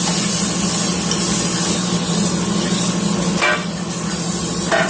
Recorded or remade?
recorded